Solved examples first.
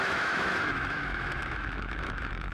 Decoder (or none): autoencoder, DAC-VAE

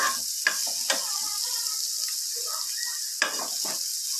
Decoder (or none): none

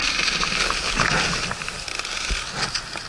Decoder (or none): none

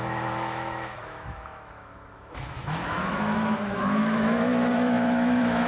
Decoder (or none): autoencoder, DAC-VAE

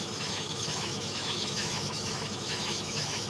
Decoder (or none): autoencoder, DAC-VAE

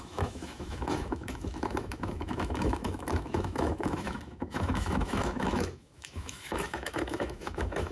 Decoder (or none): autoencoder, DAC-VAE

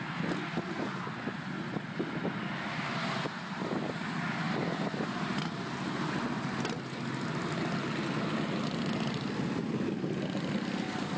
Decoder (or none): none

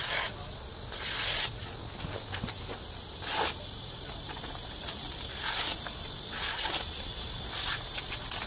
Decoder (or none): none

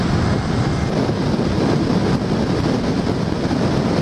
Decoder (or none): none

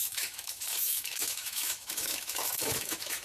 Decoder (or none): autoencoder, DAC-VAE